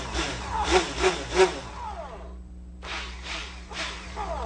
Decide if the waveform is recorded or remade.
remade